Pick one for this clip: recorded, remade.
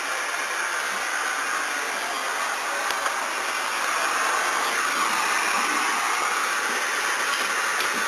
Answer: recorded